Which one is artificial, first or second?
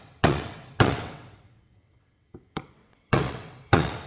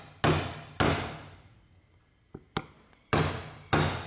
first